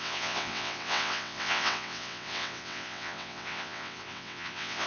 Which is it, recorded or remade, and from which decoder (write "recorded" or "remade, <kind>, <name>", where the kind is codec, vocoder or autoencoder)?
remade, vocoder, WaveNeXt